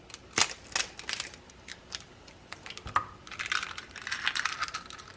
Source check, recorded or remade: recorded